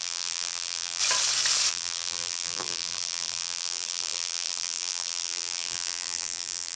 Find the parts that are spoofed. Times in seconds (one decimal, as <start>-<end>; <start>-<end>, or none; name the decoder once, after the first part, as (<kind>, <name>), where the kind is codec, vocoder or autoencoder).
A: 0.0-1.0 (vocoder, BigVGAN v2); 1.7-6.8